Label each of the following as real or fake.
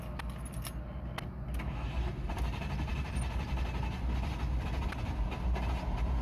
real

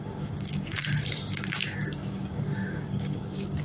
fake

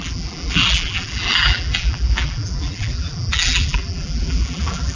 fake